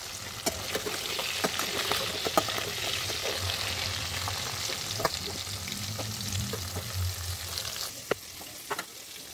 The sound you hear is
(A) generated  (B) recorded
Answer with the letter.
B